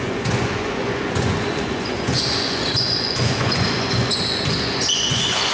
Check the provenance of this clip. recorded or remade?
remade